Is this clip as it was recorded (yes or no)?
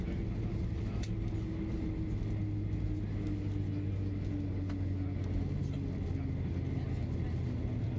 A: yes